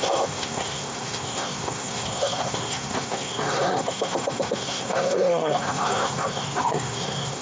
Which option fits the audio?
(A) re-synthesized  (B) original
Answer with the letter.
A